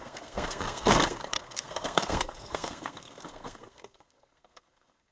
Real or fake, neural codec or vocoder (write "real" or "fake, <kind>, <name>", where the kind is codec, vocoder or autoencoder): fake, codec, SNAC